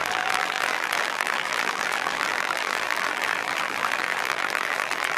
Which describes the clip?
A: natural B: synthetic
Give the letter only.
B